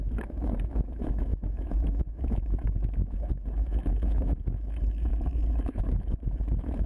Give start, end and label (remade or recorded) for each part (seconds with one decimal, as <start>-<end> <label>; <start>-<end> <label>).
0.0-6.9 remade